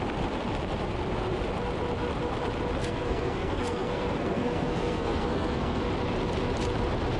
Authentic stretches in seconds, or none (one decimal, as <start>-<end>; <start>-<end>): 0.0-2.8; 5.8-7.2